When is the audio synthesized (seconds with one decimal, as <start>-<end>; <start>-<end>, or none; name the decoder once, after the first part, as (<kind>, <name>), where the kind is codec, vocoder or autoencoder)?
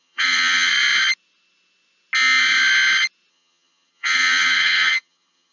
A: 0.0-0.7 (vocoder, HiFi-GAN); 3.3-5.5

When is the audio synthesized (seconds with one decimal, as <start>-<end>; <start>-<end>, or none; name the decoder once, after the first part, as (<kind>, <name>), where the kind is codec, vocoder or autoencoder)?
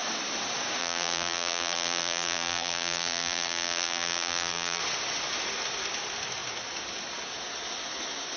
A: 0.8-4.8 (vocoder, BigVGAN v2)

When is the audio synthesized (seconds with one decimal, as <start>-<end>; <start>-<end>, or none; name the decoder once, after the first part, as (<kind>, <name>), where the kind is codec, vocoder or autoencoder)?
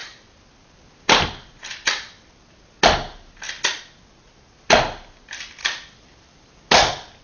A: 5.6-6.5 (vocoder, BigVGAN v2)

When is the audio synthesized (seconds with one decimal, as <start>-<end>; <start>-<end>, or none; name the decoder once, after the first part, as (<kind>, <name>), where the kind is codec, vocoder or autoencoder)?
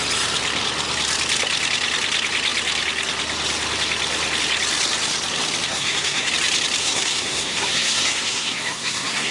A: 5.7-6.3 (codec, SNAC); 6.8-9.3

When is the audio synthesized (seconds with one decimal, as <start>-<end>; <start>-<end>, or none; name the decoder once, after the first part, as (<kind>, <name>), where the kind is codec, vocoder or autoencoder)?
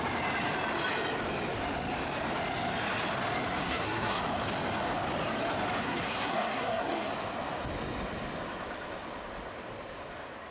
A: 3.6-4.2 (codec, SNAC); 5.8-7.1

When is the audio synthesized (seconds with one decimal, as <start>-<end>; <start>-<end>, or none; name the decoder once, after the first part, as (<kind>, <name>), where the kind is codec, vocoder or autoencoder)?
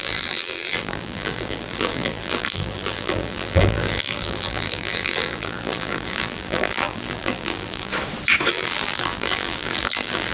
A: 0.0-7.9 (vocoder, BigVGAN v2); 8.5-10.3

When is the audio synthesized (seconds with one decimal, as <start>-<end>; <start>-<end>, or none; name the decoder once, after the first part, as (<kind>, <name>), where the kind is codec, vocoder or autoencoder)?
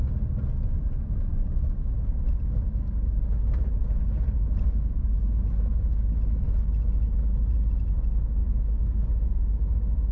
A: none